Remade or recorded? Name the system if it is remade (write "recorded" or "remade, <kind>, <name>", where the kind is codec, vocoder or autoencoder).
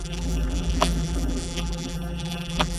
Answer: remade, vocoder, BigVGAN v2